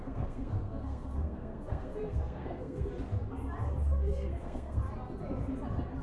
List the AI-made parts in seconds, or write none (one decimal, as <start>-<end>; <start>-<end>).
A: 0.0-2.9; 3.8-4.8